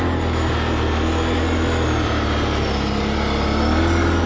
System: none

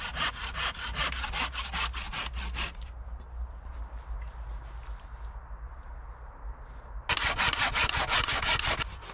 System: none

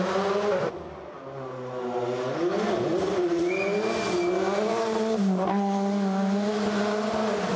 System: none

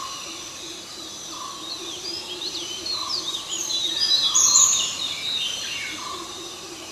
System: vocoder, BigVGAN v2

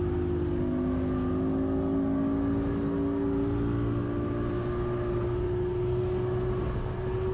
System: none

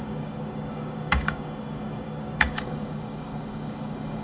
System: codec, DAC